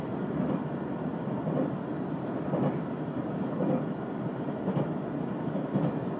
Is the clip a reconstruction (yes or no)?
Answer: yes